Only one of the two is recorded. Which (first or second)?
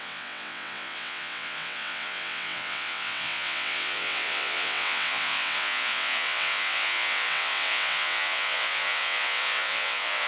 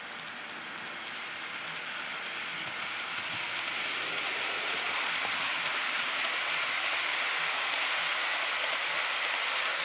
second